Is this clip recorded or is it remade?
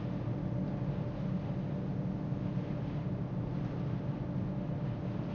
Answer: recorded